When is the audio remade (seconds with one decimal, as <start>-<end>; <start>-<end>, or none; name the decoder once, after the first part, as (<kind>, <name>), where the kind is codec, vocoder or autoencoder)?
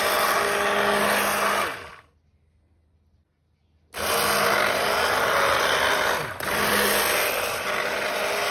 6.2-6.7 (vocoder, BigVGAN v2)